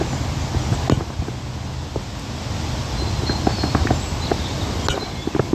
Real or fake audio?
real